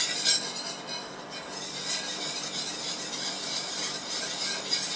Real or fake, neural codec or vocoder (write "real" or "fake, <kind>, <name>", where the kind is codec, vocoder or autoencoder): real